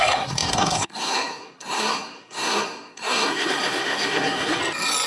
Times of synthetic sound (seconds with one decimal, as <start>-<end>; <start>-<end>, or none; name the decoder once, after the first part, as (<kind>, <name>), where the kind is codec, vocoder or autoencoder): 0.0-4.6 (codec, SNAC)